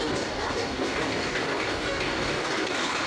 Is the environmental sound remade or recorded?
remade